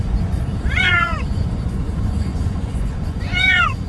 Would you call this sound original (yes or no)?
no